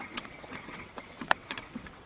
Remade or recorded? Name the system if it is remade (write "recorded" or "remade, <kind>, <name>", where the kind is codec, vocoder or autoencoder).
remade, vocoder, WaveNeXt